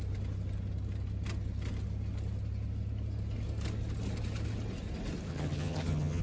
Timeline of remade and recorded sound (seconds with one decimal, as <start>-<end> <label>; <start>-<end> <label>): 0.0-5.3 recorded; 5.3-6.2 remade